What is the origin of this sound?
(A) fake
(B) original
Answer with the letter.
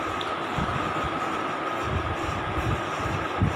B